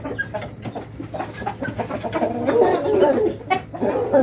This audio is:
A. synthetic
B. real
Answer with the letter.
B